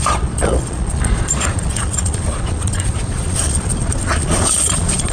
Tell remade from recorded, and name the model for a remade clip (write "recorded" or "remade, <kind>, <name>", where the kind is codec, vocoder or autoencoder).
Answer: remade, vocoder, Vocos